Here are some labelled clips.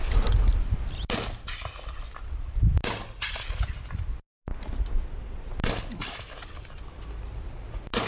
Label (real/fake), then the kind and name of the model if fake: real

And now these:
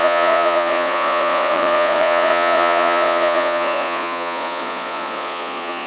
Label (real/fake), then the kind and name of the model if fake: fake, vocoder, Vocos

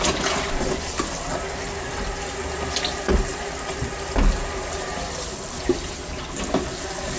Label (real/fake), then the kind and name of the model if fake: real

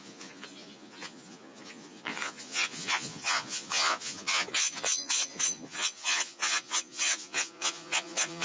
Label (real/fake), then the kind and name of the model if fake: fake, vocoder, Vocos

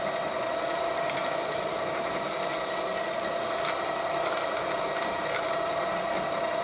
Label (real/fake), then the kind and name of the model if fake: real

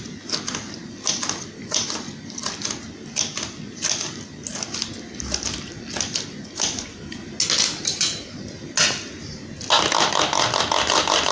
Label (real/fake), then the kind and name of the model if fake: real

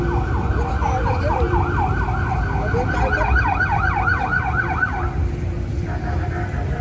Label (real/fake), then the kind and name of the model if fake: real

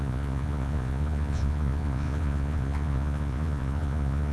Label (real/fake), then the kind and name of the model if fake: fake, vocoder, Vocos